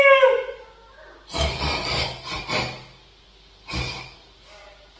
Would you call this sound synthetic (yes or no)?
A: no